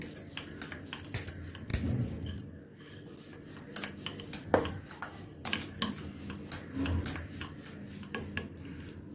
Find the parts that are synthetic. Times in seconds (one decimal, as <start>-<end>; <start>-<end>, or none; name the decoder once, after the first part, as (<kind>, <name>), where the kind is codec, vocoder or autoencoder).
none